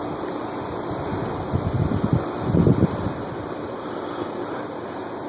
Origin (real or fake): real